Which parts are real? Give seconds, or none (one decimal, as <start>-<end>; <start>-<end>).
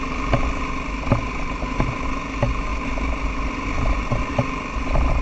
0.0-5.2